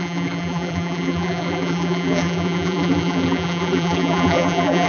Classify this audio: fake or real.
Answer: fake